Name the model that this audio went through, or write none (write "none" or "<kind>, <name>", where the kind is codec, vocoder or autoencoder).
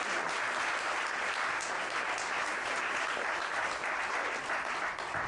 none